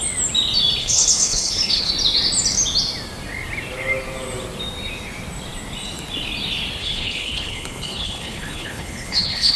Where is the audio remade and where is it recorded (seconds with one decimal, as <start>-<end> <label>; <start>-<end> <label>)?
0.0-0.8 recorded; 0.8-1.9 remade; 1.9-6.8 recorded; 6.8-9.6 remade

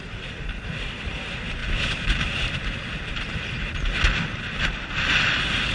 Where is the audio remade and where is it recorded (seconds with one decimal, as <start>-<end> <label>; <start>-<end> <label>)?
0.0-5.7 recorded

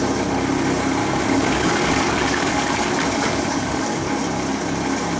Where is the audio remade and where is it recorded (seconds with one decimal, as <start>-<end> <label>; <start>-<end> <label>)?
0.0-1.0 recorded; 1.0-4.1 remade; 4.1-5.2 recorded

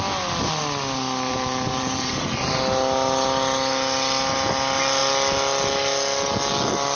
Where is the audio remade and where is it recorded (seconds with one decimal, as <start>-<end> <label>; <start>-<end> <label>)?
0.0-1.3 recorded; 1.3-2.3 remade; 2.3-7.0 recorded